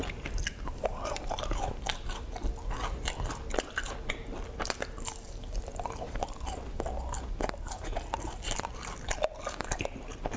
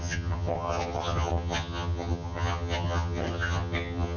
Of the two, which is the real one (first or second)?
first